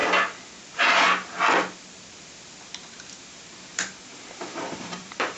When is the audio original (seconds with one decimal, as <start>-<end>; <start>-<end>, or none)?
0.0-3.2